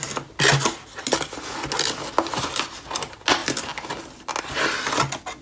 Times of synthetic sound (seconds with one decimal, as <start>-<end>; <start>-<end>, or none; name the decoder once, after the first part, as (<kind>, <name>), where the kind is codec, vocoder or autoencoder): none